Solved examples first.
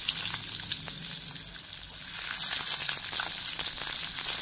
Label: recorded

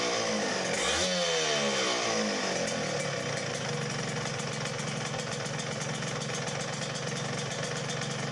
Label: recorded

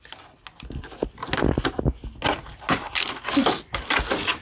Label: recorded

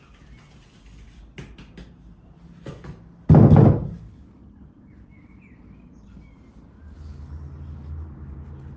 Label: recorded